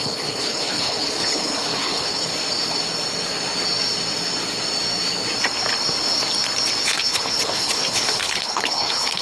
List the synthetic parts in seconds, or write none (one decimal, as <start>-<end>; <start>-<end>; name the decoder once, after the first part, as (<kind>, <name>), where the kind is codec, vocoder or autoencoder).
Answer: 0.0-2.3 (codec, HILCodec); 6.8-9.2